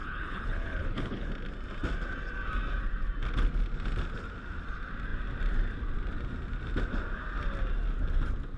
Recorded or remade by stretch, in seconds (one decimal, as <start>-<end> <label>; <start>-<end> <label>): 0.0-1.3 remade; 1.3-8.6 recorded